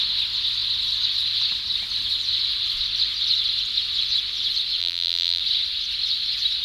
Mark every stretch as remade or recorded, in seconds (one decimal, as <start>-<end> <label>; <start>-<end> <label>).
0.0-4.8 recorded; 4.8-5.4 remade; 5.4-6.6 recorded